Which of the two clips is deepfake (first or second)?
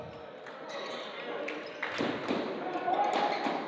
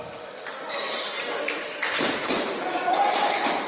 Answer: second